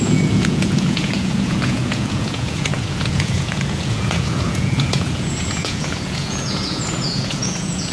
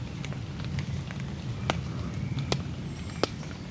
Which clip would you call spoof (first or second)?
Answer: first